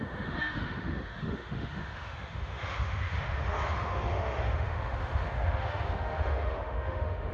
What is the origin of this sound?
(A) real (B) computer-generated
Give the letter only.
B